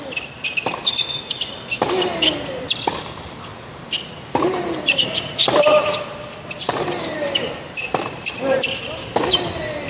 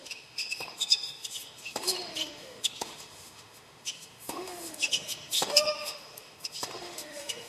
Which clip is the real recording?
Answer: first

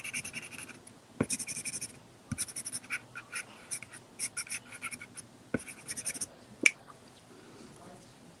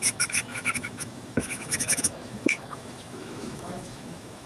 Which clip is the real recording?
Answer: first